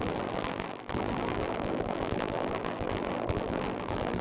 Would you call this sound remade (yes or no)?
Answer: yes